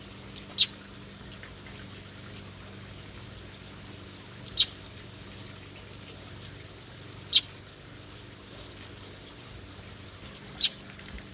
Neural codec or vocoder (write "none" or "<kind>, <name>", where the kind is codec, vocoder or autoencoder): none